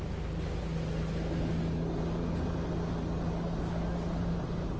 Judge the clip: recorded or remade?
recorded